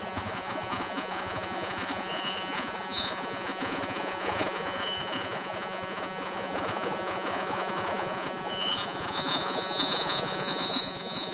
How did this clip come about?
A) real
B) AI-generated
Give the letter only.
B